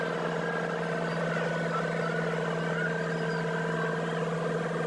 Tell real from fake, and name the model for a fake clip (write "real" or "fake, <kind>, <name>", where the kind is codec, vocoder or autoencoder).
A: real